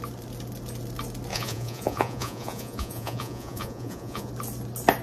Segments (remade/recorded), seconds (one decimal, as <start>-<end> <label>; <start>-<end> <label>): 0.0-1.3 recorded; 1.3-4.3 remade; 4.3-5.0 recorded